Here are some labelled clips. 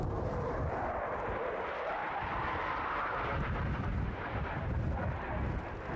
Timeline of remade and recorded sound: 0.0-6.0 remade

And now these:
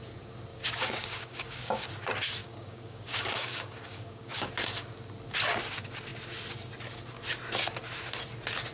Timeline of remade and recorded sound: 0.0-0.5 recorded; 0.5-1.9 remade; 1.9-2.4 recorded; 2.4-4.5 remade; 4.5-8.7 recorded